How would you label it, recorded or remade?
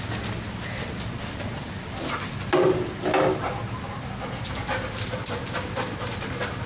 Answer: recorded